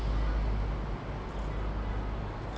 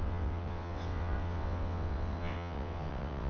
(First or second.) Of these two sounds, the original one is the first